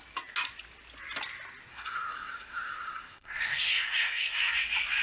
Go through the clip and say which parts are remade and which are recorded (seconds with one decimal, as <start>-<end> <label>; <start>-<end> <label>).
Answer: 0.0-1.7 recorded; 1.7-4.5 remade; 4.5-5.0 recorded